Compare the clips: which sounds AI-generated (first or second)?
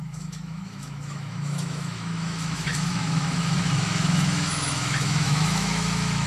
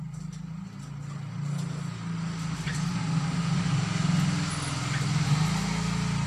first